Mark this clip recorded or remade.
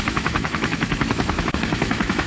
remade